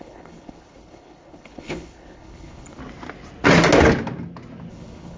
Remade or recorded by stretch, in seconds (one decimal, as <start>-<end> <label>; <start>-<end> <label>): 0.0-2.8 remade; 2.8-4.7 recorded; 4.7-5.2 remade